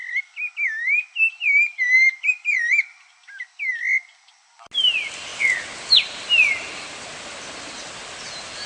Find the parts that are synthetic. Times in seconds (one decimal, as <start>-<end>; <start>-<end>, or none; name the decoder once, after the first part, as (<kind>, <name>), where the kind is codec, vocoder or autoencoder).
1.4-3.1 (vocoder, BigVGAN v2)